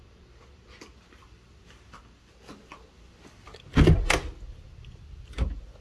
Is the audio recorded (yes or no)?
yes